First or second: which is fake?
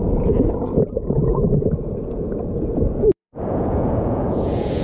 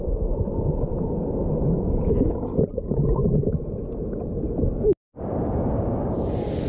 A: first